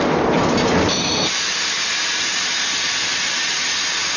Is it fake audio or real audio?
real